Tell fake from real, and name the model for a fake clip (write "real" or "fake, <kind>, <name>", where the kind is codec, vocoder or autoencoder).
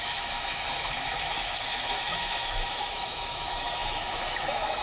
fake, autoencoder, DAC-VAE